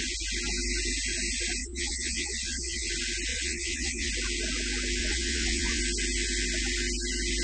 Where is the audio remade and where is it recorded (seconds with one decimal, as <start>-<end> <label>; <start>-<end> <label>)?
0.0-1.6 recorded; 1.6-2.9 remade; 2.9-3.3 recorded; 3.3-4.1 remade; 4.1-5.0 recorded; 5.0-5.8 remade; 5.8-7.4 recorded